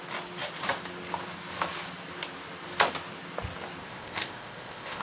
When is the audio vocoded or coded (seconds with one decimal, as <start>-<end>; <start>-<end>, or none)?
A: 3.8-5.0